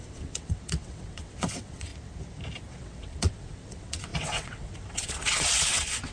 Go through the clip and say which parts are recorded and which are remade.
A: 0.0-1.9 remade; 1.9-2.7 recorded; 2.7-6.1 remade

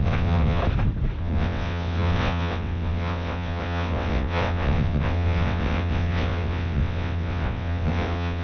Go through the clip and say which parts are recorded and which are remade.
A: 0.0-0.6 remade; 0.6-1.2 recorded; 1.2-8.4 remade